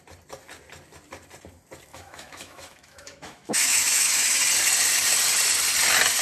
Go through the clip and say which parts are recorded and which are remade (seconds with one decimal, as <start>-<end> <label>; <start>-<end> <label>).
0.0-1.9 recorded; 1.9-4.4 remade; 4.4-6.2 recorded